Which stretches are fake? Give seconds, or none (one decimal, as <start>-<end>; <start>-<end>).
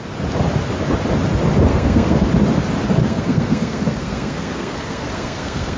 1.7-2.3; 3.0-5.8